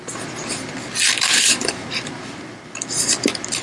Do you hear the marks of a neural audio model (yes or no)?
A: no